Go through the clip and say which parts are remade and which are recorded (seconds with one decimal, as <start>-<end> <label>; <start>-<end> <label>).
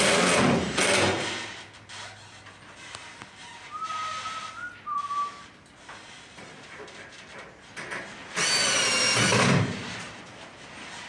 0.0-11.1 recorded